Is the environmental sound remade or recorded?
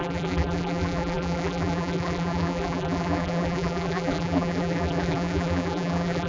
remade